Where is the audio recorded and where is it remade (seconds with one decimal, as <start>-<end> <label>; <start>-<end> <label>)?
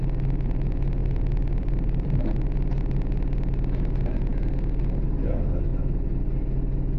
0.0-1.0 recorded; 1.0-2.8 remade; 2.8-7.0 recorded